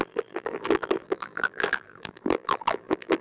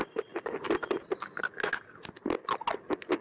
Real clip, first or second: second